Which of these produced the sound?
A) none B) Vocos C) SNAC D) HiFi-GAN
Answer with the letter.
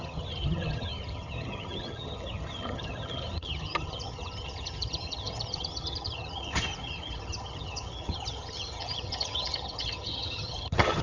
D